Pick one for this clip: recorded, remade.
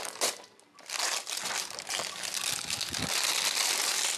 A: recorded